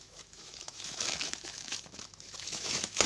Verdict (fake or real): fake